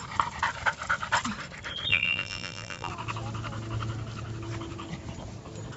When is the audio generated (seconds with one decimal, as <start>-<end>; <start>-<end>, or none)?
1.9-2.9